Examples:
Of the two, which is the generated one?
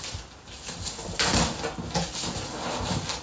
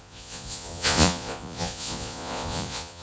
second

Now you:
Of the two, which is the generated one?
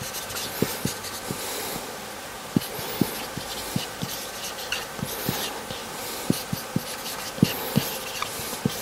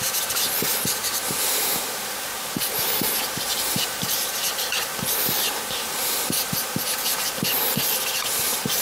second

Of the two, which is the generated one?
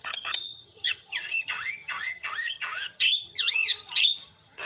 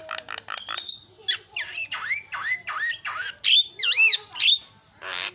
first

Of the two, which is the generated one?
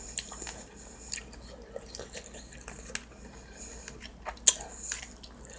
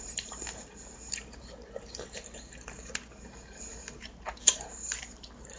second